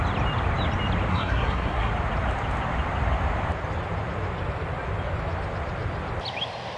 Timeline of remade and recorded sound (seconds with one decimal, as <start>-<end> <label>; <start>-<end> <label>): 0.0-1.1 recorded; 1.1-1.9 remade; 1.9-6.8 recorded